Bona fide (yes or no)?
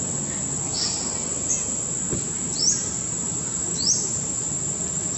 yes